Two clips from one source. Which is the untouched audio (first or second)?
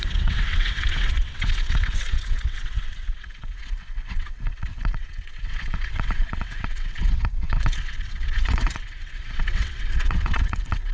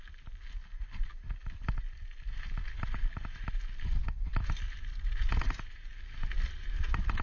second